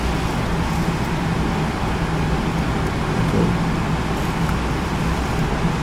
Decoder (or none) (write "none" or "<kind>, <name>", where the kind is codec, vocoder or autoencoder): none